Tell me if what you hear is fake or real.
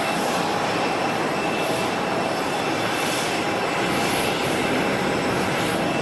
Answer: real